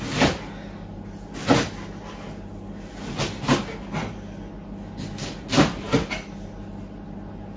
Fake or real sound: real